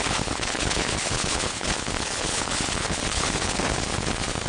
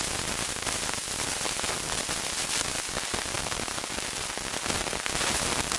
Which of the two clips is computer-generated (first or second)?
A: first